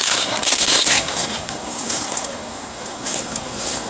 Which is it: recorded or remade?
remade